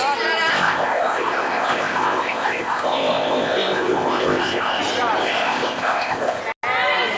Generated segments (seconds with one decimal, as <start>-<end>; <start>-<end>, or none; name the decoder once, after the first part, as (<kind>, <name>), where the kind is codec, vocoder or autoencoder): 0.5-4.8 (codec, ZipCodec); 5.2-6.4